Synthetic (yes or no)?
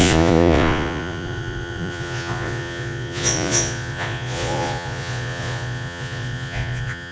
yes